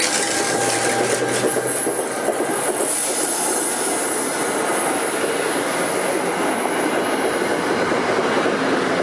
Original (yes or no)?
yes